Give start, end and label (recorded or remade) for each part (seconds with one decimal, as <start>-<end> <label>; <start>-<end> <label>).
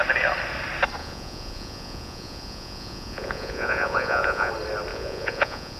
0.0-1.0 recorded; 1.0-4.5 remade; 4.5-4.9 recorded; 4.9-5.8 remade